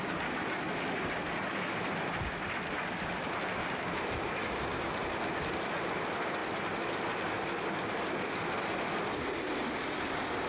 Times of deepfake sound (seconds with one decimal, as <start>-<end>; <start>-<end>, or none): none